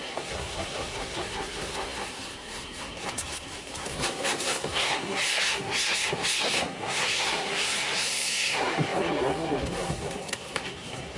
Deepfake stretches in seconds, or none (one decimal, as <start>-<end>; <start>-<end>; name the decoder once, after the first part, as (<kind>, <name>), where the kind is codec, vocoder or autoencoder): 0.0-11.2 (codec, SNAC)